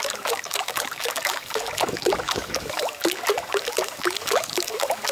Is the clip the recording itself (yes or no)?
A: no